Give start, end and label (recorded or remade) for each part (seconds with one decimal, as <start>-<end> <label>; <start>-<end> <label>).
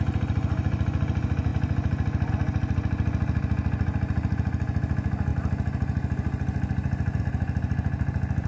0.0-8.5 recorded